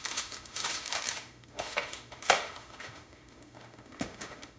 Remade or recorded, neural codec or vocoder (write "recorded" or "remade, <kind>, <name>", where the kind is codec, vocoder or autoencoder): remade, autoencoder, DAC-VAE